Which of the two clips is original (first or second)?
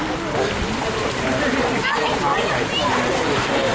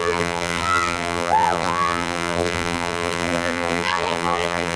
first